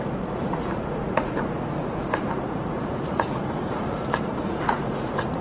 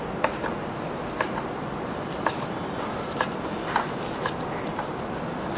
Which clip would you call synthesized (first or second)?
first